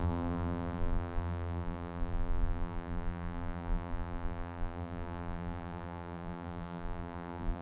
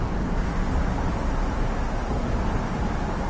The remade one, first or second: first